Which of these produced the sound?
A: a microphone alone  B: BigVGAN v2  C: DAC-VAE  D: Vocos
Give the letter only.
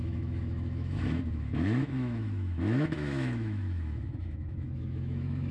C